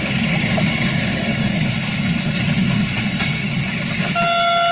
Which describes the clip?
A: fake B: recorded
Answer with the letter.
B